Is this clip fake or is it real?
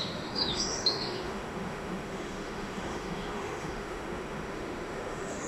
fake